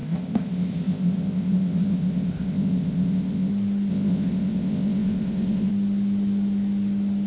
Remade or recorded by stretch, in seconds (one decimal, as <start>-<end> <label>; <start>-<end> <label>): 0.0-3.5 remade; 3.5-3.9 recorded; 3.9-5.7 remade; 5.7-7.3 recorded